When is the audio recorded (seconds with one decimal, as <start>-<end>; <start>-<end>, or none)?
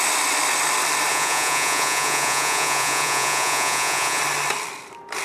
0.0-1.1; 4.2-5.2